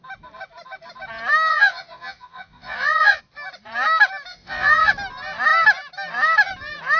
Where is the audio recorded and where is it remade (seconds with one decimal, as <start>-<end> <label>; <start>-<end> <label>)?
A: 0.0-1.5 recorded; 1.5-3.2 remade; 3.2-4.3 recorded; 4.3-4.9 remade; 4.9-7.0 recorded